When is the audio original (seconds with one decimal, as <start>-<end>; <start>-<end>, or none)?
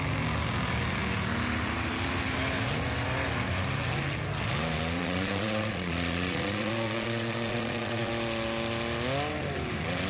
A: 0.0-5.0; 8.1-10.1